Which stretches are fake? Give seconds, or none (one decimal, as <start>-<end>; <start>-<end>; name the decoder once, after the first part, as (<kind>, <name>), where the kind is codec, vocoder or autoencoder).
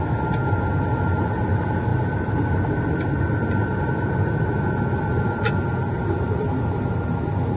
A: none